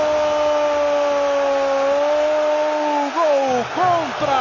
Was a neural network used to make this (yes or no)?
no